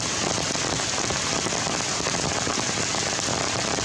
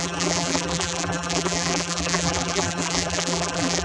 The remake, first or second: second